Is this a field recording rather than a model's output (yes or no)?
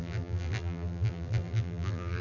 no